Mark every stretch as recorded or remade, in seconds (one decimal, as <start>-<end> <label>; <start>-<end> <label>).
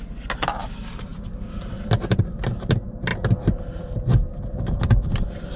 0.0-5.6 recorded